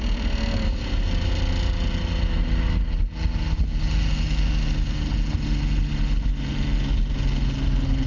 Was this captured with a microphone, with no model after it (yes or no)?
yes